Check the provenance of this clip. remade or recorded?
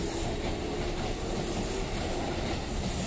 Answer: recorded